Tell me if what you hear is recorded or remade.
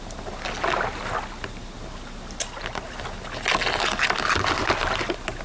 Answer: recorded